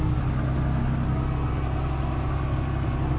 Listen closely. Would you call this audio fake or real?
real